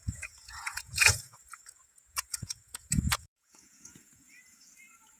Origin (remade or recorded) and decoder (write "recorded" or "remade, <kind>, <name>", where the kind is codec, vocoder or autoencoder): remade, vocoder, Vocos